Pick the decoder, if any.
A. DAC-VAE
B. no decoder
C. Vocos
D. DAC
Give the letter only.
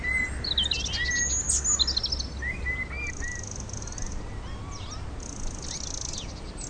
B